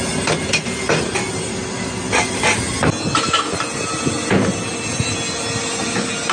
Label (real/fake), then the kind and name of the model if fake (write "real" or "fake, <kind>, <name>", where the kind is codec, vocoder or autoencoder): real